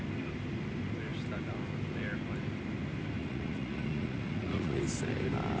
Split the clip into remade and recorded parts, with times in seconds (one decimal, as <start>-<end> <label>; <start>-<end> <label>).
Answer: 0.0-3.2 recorded; 3.2-4.8 remade; 4.8-5.6 recorded